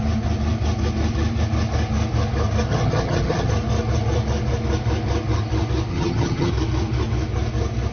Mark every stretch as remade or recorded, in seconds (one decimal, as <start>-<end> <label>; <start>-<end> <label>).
0.0-2.7 recorded; 2.7-3.5 remade; 3.5-5.9 recorded; 5.9-6.5 remade; 6.5-7.9 recorded